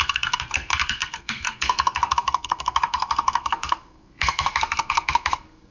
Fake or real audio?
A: fake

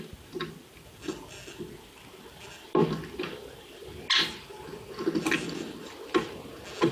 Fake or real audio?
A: real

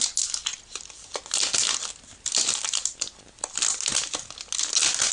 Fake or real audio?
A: real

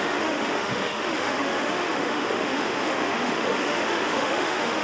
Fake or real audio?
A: fake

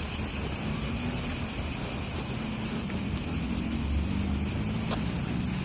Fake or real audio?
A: real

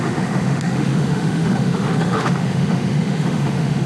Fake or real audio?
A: fake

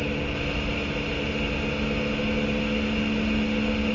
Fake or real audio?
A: real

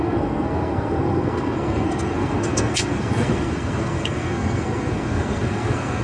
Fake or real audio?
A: fake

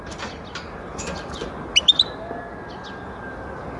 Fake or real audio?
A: real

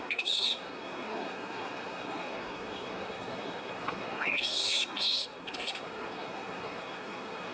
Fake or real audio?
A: fake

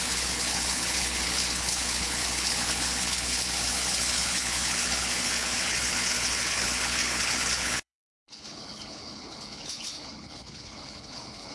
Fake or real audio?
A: fake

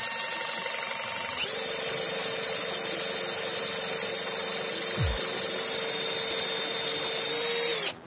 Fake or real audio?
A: real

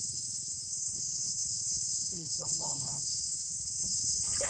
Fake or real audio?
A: fake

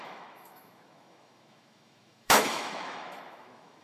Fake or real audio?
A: fake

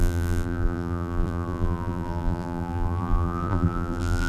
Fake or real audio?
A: fake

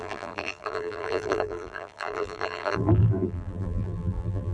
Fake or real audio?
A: fake